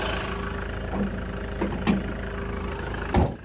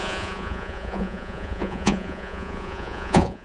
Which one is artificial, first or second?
second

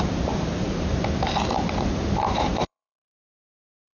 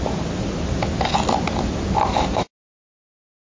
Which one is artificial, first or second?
first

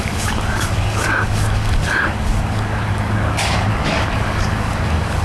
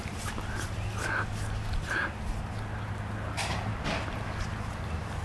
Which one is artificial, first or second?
first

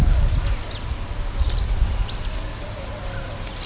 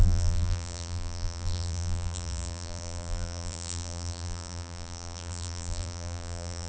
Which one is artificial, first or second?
second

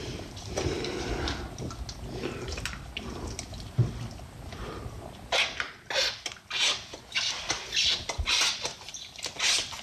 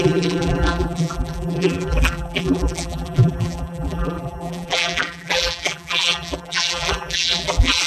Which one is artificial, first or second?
second